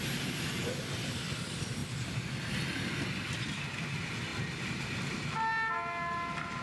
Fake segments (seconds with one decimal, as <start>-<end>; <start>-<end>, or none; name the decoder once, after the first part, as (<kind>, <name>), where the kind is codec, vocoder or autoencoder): none